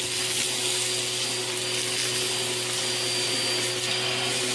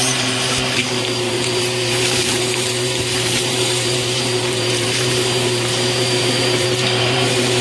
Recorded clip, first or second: first